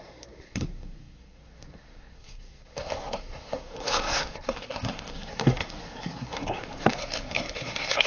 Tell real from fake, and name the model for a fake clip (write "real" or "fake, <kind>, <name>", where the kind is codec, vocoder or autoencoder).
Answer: fake, codec, SNAC